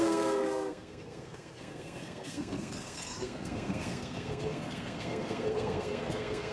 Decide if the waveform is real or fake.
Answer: fake